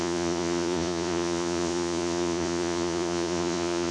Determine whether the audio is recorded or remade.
remade